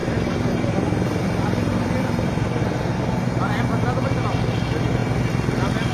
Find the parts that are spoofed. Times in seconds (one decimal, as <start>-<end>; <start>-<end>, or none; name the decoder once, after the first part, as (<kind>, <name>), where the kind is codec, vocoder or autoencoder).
0.0-2.6 (vocoder, BigVGAN v2)